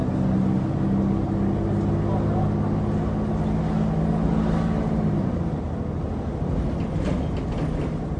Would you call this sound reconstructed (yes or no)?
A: no